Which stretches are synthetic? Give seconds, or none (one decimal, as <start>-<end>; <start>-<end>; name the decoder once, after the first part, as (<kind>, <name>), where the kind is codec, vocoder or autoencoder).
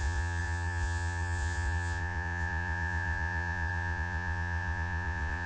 0.0-5.5 (vocoder, Vocos)